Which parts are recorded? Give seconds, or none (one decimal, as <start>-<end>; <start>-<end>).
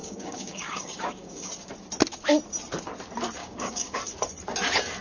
1.5-3.4; 4.0-5.0